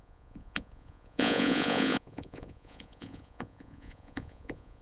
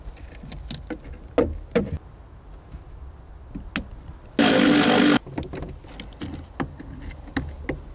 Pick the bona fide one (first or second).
second